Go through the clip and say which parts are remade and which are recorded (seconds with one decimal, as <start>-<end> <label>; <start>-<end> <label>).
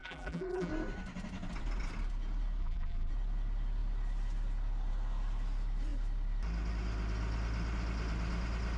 0.0-0.7 remade; 0.7-2.6 recorded; 2.6-3.1 remade; 3.1-8.8 recorded